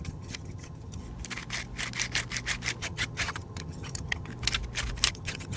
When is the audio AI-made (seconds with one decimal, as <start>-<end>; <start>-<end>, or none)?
0.0-1.0; 2.8-4.3; 5.1-5.6

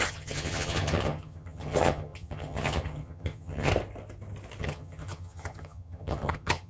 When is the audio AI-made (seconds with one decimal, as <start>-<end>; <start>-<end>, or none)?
0.0-3.7; 4.6-6.7

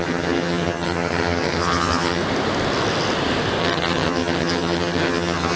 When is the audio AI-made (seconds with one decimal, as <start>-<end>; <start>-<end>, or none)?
0.0-2.2; 3.6-5.6